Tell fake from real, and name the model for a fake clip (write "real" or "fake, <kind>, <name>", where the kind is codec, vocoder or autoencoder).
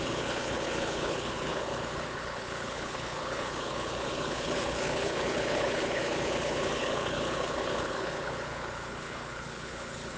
fake, codec, HILCodec